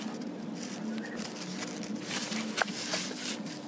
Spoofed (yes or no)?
no